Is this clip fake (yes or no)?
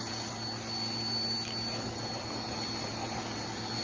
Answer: no